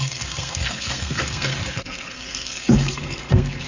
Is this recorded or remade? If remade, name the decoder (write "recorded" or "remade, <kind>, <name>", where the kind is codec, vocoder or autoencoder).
remade, codec, SNAC